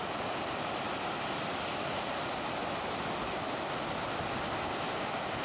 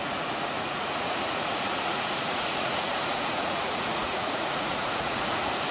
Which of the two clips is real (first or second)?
first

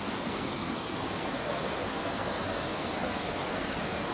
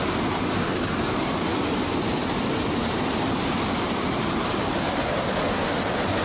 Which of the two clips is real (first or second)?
second